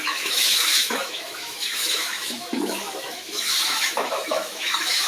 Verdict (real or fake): fake